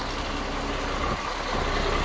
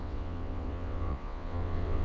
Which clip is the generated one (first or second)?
second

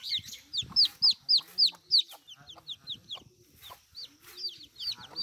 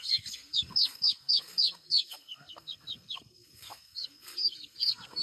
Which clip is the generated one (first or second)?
second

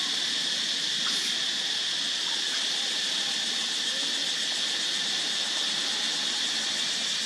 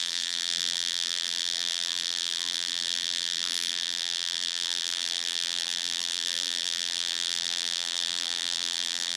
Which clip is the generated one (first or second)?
second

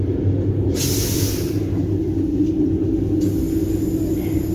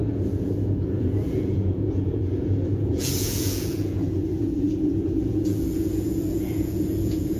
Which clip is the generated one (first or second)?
second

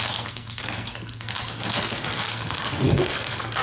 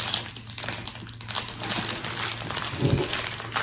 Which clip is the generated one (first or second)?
first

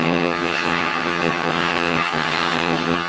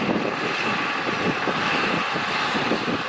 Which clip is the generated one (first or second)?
first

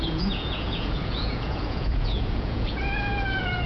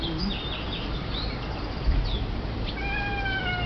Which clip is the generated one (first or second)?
first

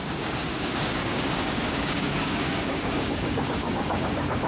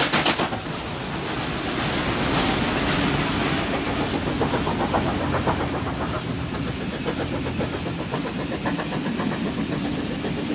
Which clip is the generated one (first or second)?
first